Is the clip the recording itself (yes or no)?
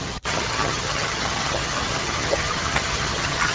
no